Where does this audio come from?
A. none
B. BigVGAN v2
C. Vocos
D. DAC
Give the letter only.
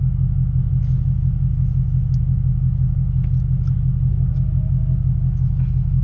A